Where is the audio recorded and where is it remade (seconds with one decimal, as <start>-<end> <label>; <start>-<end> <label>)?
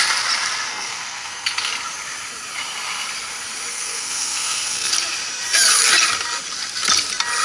0.0-0.7 recorded; 0.7-1.7 remade; 1.7-3.7 recorded; 3.7-4.9 remade; 4.9-7.4 recorded